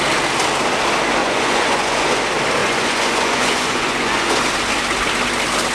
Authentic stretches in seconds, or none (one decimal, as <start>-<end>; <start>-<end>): 0.0-1.2; 2.2-2.6; 4.4-5.7